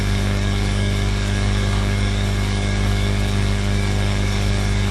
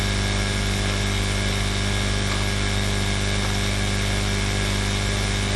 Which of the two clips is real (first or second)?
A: second